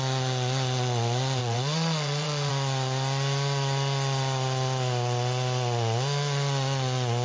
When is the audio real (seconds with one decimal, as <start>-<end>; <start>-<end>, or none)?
0.0-1.4; 2.5-7.2